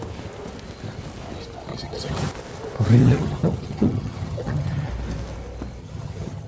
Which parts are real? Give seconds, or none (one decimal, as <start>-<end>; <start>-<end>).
0.0-1.7; 2.3-3.0; 4.9-5.8